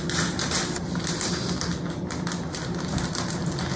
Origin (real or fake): real